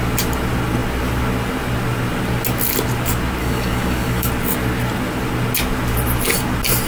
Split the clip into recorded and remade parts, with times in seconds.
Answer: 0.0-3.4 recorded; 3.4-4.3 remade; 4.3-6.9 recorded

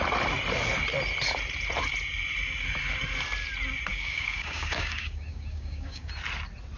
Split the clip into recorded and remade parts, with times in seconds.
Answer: 0.0-3.9 recorded; 3.9-6.1 remade; 6.1-6.8 recorded

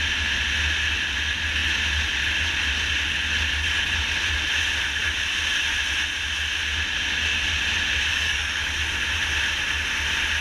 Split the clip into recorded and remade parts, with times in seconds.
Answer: 0.0-8.1 recorded; 8.1-8.7 remade; 8.7-10.4 recorded